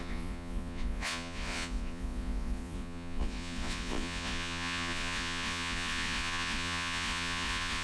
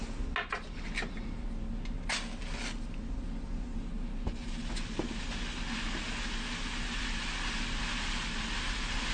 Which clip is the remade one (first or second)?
first